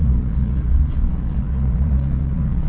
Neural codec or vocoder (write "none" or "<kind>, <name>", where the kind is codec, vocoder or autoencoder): vocoder, Vocos